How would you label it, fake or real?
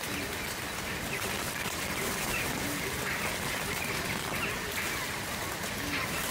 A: real